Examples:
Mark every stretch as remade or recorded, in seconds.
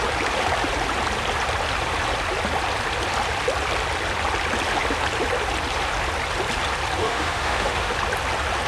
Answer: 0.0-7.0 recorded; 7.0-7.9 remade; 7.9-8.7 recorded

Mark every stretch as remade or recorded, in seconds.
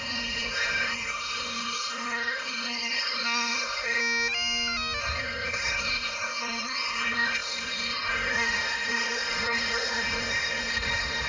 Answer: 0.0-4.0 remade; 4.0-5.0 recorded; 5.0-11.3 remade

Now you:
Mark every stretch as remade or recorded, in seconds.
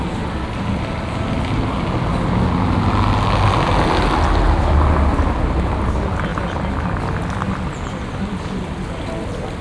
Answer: 0.0-9.6 recorded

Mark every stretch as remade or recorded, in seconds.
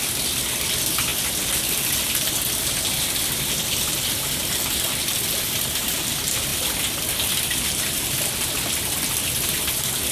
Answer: 0.0-10.1 recorded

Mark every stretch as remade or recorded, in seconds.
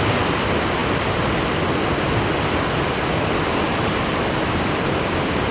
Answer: 0.0-5.5 recorded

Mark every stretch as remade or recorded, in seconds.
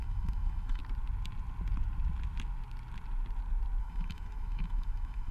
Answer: 0.0-0.8 remade; 0.8-3.8 recorded; 3.8-5.3 remade